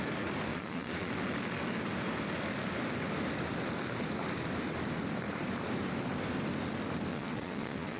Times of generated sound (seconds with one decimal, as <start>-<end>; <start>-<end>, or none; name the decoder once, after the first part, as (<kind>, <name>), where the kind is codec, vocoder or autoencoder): 0.5-1.1 (vocoder, Vocos); 7.1-8.0